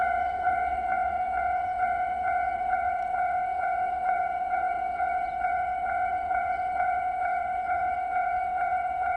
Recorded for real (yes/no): no